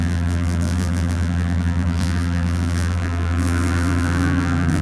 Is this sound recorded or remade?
remade